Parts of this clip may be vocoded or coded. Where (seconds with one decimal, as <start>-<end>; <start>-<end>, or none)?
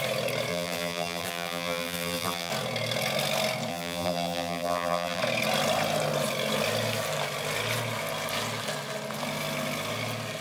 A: 0.5-2.5; 3.7-5.2